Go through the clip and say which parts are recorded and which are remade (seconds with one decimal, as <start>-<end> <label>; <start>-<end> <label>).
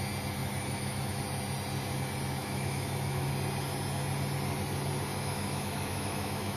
0.0-0.4 recorded; 0.4-1.2 remade; 1.2-2.4 recorded; 2.4-3.3 remade; 3.3-5.1 recorded; 5.1-6.6 remade